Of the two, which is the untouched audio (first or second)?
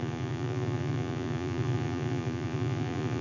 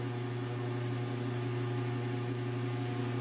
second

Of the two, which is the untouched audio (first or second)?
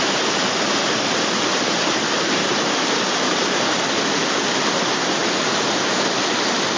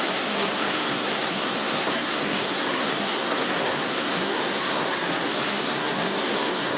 first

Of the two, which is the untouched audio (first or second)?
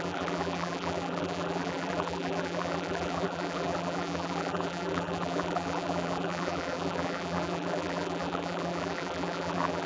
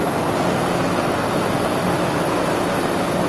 second